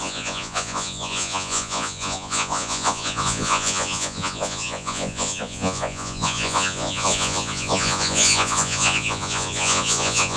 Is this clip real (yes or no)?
no